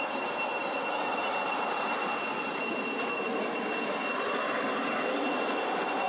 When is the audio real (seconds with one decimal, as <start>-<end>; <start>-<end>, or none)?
0.0-6.1